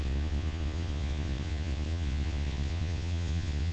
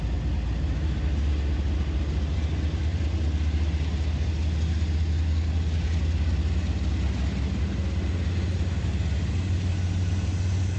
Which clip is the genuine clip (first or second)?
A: second